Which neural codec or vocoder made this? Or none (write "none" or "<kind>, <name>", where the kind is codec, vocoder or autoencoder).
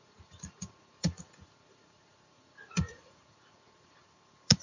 vocoder, Vocos